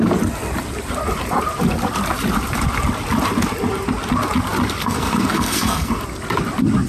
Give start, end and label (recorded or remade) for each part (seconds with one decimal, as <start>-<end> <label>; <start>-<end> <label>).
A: 0.0-4.8 recorded; 4.8-6.0 remade; 6.0-6.9 recorded